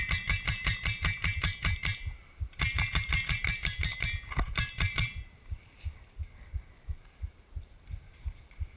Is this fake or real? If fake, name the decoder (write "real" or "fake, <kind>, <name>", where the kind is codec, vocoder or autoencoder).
fake, vocoder, BigVGAN v2